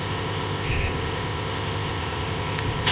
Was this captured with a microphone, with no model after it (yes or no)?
no